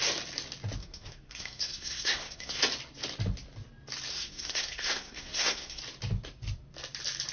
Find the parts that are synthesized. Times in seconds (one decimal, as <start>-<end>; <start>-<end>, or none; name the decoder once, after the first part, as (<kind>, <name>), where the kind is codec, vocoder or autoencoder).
0.8-2.6 (codec, SNAC); 4.1-5.8

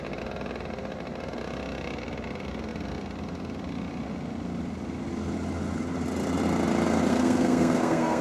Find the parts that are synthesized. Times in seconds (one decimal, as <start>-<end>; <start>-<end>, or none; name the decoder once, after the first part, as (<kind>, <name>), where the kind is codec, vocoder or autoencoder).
7.1-8.2 (codec, SNAC)

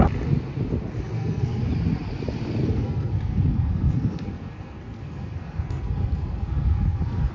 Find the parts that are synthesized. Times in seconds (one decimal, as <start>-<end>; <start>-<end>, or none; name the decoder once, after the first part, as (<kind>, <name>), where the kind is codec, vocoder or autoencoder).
1.1-1.6 (codec, SNAC); 2.7-7.3

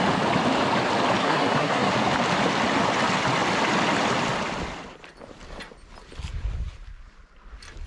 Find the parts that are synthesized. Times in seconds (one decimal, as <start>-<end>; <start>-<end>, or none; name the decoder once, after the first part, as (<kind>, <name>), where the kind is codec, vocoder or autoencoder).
1.2-1.9 (codec, SNAC)

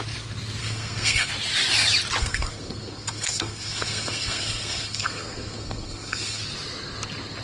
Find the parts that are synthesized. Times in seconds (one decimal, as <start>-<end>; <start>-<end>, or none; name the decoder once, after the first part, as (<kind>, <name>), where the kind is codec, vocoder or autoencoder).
0.6-1.3 (codec, SNAC); 2.2-6.4

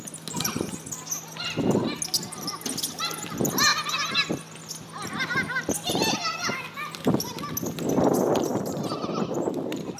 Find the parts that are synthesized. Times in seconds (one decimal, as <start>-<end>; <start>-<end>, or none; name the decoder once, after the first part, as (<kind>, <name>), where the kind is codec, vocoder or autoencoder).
none